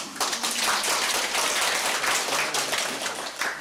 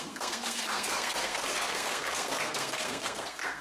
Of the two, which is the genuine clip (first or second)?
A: first